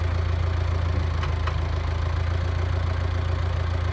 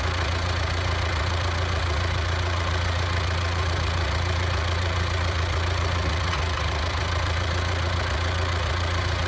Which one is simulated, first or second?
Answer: second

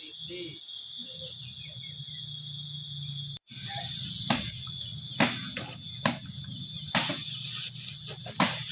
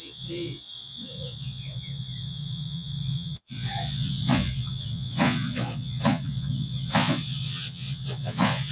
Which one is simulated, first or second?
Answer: second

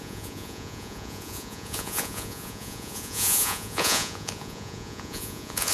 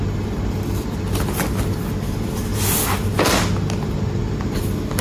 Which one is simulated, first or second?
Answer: first